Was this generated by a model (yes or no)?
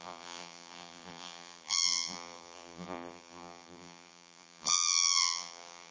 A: yes